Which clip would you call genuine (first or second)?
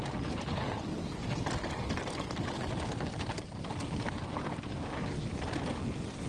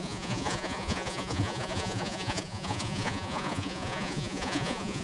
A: first